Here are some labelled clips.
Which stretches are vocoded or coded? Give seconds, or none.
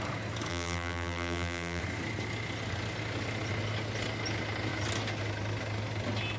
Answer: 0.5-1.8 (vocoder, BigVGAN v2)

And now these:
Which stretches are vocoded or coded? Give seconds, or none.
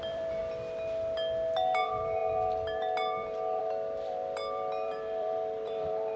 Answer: 0.0-0.4 (vocoder, BigVGAN v2); 1.8-6.2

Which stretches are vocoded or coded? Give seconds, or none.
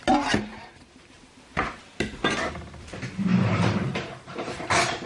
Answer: 0.5-1.8 (vocoder, BigVGAN v2); 3.3-4.6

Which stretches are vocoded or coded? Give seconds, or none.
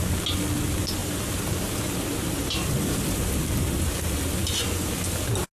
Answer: 1.0-3.3 (vocoder, BigVGAN v2)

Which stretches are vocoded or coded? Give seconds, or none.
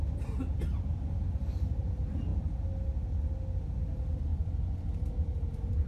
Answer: 4.3-5.9 (vocoder, BigVGAN v2)